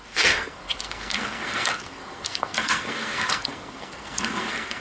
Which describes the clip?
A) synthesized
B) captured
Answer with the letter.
A